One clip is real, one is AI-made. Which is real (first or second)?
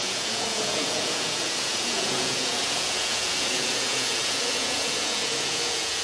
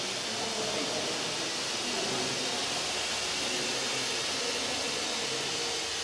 second